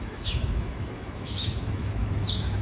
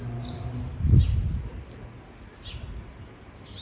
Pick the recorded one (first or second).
second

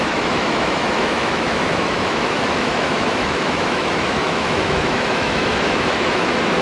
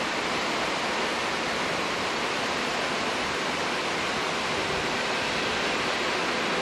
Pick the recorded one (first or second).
second